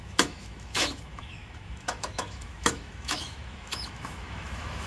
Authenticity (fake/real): fake